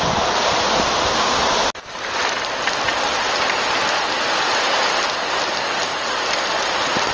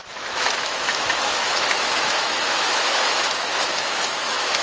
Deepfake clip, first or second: second